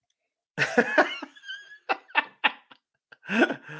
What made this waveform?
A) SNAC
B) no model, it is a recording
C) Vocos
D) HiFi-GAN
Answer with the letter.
B